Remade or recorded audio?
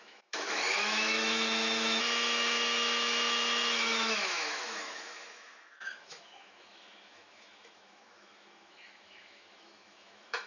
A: remade